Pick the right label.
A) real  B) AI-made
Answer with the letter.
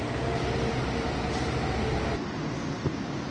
A